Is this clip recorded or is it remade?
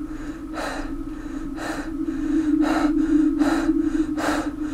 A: recorded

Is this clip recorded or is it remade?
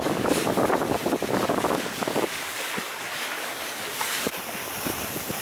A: remade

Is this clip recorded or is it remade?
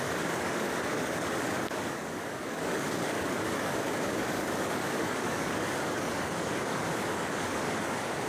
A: remade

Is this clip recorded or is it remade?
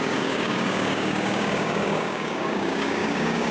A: remade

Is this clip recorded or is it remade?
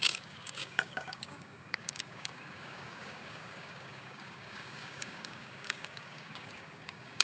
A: remade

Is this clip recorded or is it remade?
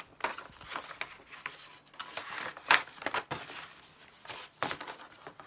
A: recorded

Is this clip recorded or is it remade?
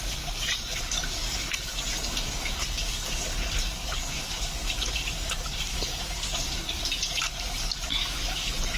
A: remade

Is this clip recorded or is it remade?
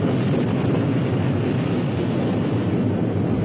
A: recorded